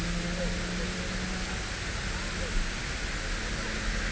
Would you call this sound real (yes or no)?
yes